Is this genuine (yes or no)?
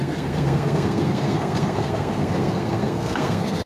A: no